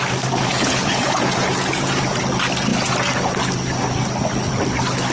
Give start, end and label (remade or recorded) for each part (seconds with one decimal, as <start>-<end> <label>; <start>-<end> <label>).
0.0-0.5 recorded; 0.5-2.2 remade; 2.2-5.1 recorded